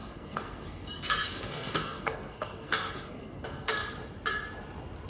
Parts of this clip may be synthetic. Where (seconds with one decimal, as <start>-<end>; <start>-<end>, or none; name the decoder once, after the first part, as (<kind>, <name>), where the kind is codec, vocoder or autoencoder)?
0.0-3.8 (codec, SNAC)